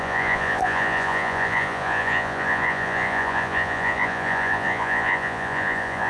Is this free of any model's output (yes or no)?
no